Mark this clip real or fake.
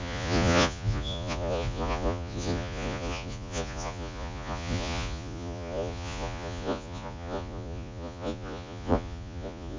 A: fake